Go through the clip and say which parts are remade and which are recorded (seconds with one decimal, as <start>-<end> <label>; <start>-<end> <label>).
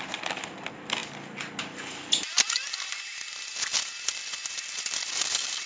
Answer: 0.0-5.7 recorded